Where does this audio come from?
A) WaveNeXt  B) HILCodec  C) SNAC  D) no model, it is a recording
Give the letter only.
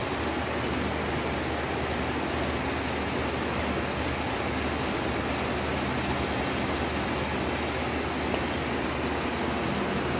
D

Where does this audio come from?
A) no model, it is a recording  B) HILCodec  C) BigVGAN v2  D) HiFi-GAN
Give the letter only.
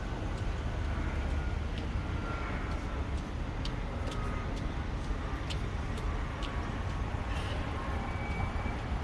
A